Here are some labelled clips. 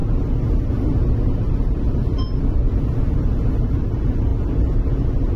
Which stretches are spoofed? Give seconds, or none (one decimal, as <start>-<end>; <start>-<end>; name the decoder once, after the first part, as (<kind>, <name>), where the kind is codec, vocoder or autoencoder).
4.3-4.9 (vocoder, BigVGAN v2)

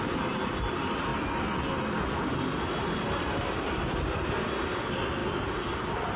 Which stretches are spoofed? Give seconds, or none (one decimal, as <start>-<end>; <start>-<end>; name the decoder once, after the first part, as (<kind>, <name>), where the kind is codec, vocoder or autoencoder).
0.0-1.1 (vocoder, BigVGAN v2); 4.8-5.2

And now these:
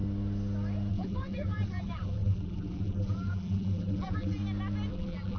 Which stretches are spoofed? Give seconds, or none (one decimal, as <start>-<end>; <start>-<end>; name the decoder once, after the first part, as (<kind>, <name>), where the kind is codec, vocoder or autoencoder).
0.9-4.4 (vocoder, BigVGAN v2); 4.9-5.4

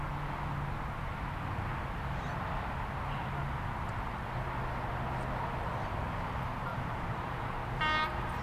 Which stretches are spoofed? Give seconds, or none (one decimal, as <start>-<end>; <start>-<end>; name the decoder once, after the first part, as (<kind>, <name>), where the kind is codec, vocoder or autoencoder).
6.7-7.7 (vocoder, BigVGAN v2)